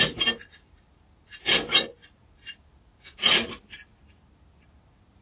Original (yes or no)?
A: yes